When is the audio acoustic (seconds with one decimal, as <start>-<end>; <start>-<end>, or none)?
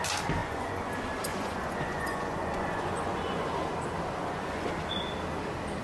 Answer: 0.0-0.4; 0.9-1.3; 3.5-4.2; 4.7-5.8